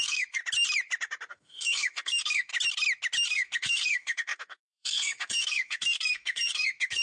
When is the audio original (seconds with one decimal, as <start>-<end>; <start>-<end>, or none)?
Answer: 0.4-1.3; 2.5-3.3